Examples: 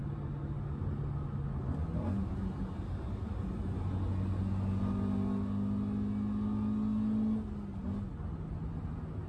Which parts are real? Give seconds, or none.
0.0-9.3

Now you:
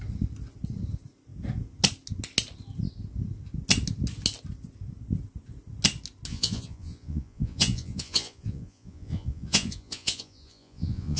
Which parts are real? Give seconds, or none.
0.0-6.3

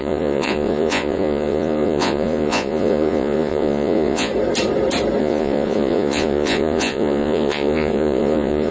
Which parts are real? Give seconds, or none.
4.3-5.2